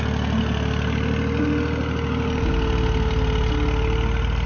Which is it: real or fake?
real